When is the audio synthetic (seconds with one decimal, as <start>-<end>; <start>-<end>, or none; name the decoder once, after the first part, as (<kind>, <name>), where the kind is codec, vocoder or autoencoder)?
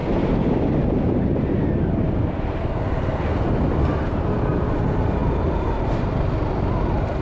none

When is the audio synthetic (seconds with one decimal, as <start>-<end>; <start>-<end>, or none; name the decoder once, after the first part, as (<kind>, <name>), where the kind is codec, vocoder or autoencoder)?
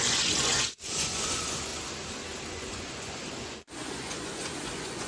0.0-1.7 (vocoder, Vocos); 2.5-5.1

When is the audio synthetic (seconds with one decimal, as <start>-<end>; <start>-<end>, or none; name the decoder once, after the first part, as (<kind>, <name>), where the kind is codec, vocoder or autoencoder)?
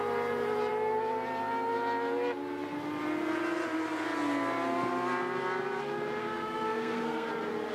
6.2-7.3 (codec, SNAC)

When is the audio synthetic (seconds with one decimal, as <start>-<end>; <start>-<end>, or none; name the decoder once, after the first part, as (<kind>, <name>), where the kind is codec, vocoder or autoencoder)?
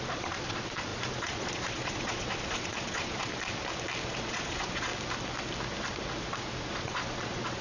0.0-3.3 (vocoder, Vocos); 4.2-4.9; 6.8-7.6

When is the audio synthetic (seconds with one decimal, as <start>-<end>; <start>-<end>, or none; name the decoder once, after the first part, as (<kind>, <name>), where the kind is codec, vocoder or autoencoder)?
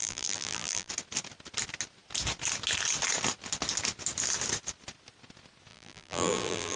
0.0-0.9 (vocoder, BigVGAN v2); 5.7-6.8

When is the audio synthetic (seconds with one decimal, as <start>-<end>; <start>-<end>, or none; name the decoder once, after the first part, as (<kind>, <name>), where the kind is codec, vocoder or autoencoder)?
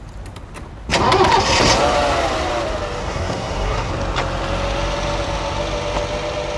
3.0-3.9 (codec, SNAC)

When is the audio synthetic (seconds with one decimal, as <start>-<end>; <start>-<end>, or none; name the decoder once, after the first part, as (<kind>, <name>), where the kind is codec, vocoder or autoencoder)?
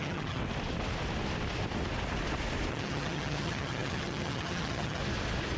0.0-0.4 (vocoder, HiFi-GAN); 2.7-5.0